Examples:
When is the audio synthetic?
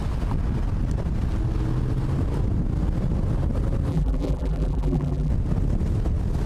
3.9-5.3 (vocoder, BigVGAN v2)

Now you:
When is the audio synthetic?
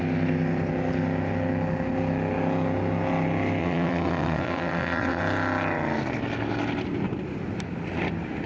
3.6-5.2 (vocoder, WaveNeXt)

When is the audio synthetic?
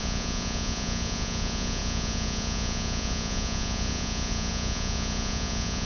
0.0-5.8 (vocoder, Vocos)